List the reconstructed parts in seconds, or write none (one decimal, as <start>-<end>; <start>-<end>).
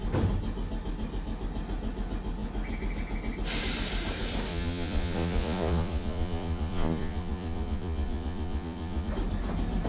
4.5-9.1